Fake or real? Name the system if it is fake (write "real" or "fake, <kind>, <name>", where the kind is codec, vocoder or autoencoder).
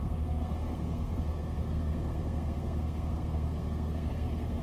fake, codec, SNAC